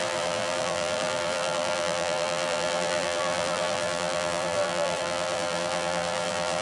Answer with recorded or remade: remade